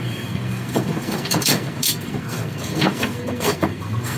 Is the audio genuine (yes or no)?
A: no